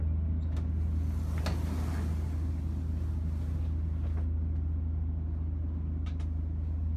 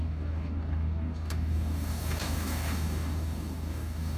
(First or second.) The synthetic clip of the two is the second